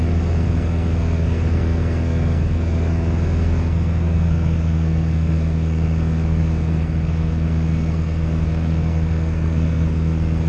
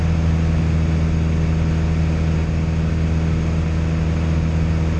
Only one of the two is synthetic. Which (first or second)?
first